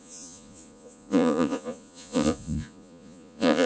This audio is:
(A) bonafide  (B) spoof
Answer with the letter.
B